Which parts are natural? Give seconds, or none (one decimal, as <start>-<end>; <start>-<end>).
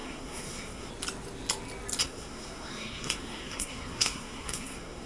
0.9-2.0